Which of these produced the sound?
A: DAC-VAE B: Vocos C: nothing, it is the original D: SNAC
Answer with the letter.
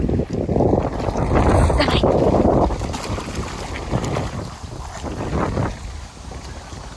C